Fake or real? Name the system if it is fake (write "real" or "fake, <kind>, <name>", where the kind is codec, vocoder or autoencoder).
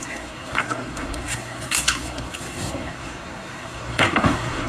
fake, codec, SNAC